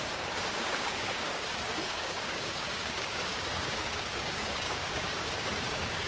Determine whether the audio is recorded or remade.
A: remade